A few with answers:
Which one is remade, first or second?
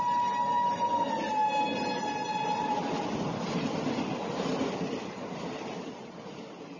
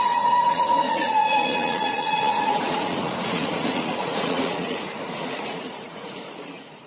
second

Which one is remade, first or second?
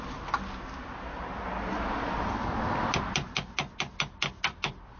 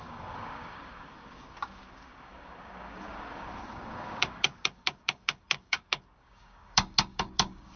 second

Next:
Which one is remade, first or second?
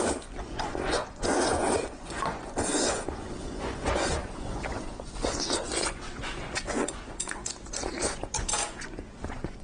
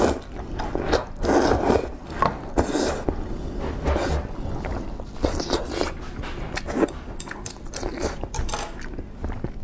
first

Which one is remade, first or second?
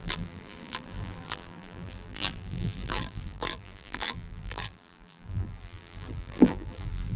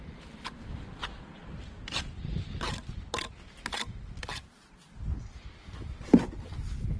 first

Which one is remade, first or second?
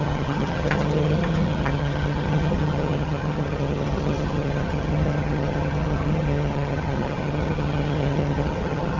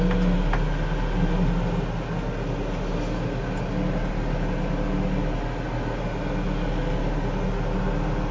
first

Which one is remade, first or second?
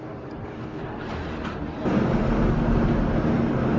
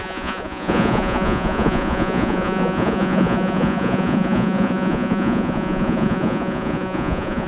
second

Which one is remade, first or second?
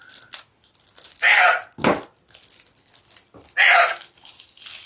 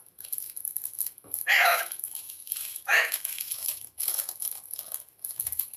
second